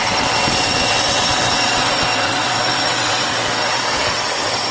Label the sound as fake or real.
fake